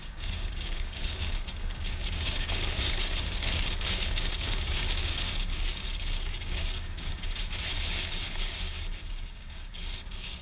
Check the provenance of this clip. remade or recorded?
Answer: remade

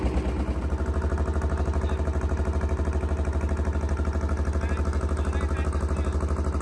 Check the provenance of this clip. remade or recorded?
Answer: recorded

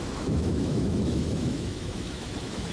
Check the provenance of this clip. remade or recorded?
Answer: remade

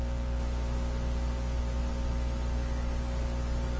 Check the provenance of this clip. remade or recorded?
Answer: recorded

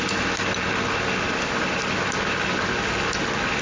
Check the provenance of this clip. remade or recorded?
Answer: recorded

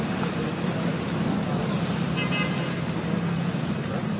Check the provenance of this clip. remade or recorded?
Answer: recorded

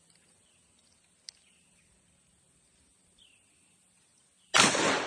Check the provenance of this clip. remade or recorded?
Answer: recorded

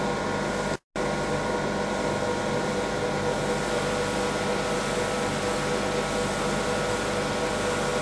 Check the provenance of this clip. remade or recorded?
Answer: recorded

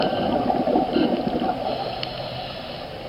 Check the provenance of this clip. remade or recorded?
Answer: recorded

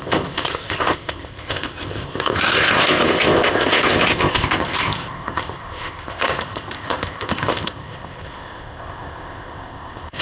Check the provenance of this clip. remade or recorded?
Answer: remade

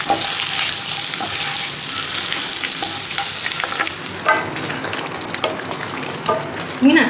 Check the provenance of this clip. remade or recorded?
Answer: recorded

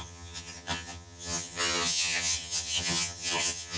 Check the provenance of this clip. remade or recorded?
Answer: remade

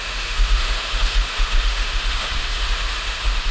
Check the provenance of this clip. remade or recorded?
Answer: remade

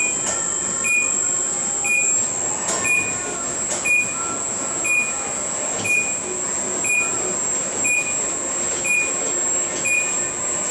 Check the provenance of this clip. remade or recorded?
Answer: recorded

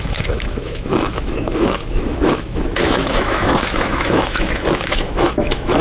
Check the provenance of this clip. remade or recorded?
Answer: remade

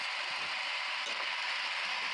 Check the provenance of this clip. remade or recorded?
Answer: recorded